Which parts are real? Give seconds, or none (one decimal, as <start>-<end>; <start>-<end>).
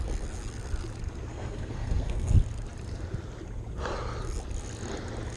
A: 0.0-1.3; 2.3-5.4